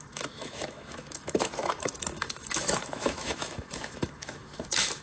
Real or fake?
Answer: fake